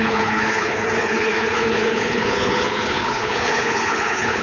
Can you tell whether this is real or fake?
fake